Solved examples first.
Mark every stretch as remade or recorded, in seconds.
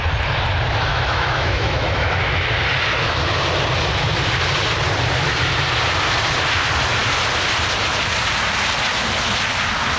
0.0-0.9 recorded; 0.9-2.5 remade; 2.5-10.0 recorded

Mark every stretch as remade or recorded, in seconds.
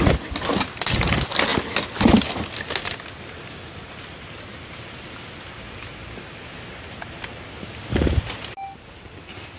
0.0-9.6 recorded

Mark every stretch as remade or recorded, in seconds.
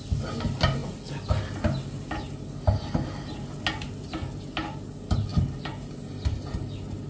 0.0-7.1 recorded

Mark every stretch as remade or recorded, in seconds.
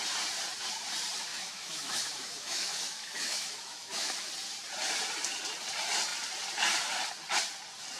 0.0-1.3 recorded; 1.3-4.3 remade; 4.3-8.0 recorded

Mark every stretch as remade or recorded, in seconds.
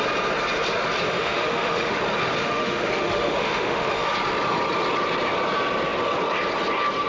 0.0-1.2 recorded; 1.2-2.0 remade; 2.0-2.4 recorded; 2.4-4.1 remade; 4.1-7.1 recorded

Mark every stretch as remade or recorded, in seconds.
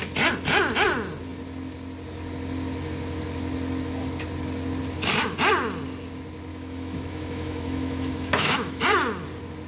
0.0-6.5 recorded; 6.5-8.8 remade; 8.8-9.7 recorded